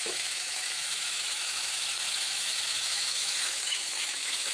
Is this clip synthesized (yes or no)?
yes